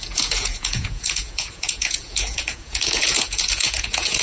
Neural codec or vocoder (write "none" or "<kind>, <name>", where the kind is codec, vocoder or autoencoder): vocoder, Vocos